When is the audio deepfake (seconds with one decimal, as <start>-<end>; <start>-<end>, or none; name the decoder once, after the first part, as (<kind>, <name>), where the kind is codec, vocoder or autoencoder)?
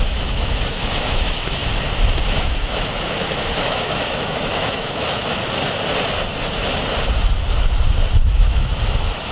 0.0-1.6 (autoencoder, DAC-VAE); 2.2-5.3; 8.3-9.3